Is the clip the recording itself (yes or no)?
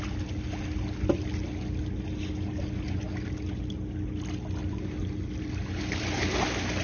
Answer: yes